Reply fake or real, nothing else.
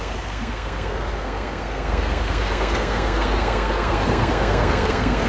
fake